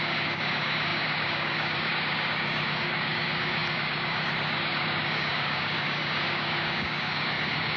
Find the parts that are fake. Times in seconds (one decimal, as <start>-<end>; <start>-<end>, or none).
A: 0.0-7.8